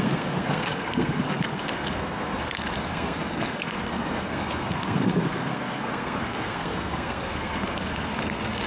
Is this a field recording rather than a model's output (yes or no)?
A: no